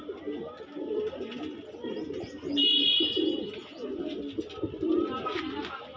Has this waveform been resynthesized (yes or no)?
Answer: no